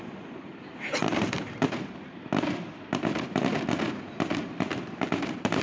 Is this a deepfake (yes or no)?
yes